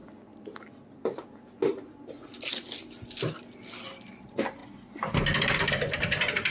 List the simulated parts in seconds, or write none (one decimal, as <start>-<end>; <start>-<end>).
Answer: none

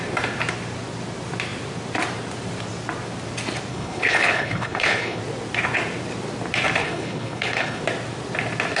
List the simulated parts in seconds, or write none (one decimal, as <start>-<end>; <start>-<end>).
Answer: 3.7-5.2; 6.8-7.8

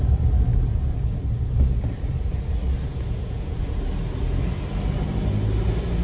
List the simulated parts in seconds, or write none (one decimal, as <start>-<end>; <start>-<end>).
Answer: 2.9-3.6

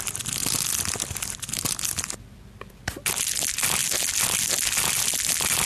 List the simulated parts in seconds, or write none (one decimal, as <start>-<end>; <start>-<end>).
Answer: none

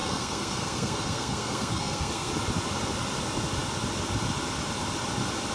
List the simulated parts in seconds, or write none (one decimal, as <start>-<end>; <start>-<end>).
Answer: 0.0-2.3

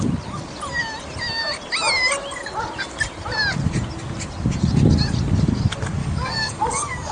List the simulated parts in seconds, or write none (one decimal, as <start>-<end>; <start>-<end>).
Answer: 6.0-7.1

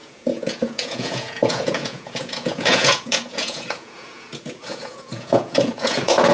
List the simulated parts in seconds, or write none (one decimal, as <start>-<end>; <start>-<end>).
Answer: 0.0-6.3

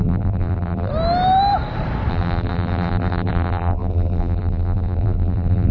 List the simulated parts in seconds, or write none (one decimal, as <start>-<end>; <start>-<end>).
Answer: 0.0-0.9; 2.1-5.7